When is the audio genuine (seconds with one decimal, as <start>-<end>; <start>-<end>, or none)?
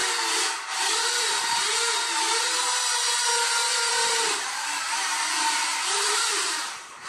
0.0-3.9